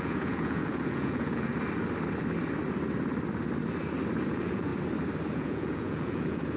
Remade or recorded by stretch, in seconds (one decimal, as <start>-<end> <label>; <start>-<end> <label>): 0.0-1.5 remade; 1.5-4.3 recorded; 4.3-4.7 remade; 4.7-5.3 recorded; 5.3-6.6 remade